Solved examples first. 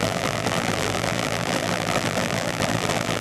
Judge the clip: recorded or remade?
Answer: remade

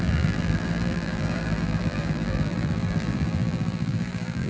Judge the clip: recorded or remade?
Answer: remade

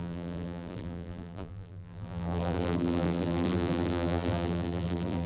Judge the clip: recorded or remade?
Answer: remade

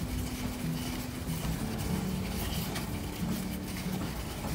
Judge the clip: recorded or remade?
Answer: recorded